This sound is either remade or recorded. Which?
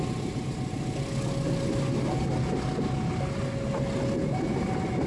recorded